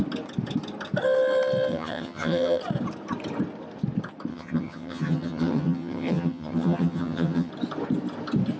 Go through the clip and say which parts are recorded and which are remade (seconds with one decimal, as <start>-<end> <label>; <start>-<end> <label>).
0.0-1.7 recorded; 1.7-2.6 remade; 2.6-4.3 recorded; 4.3-7.5 remade; 7.5-8.6 recorded